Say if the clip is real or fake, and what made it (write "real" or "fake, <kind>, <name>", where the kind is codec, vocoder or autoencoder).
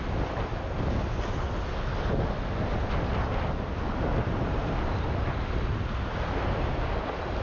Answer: real